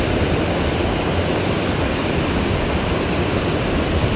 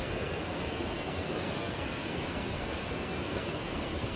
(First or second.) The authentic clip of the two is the first